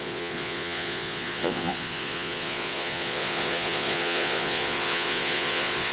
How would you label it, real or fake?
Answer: fake